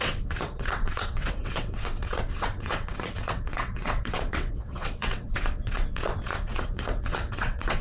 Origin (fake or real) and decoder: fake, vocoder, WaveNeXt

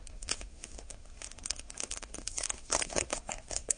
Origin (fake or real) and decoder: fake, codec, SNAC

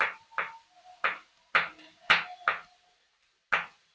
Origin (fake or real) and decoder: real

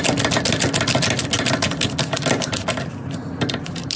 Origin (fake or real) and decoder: real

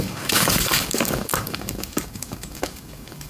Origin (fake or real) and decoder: fake, codec, DAC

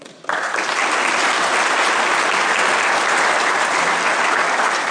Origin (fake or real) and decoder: real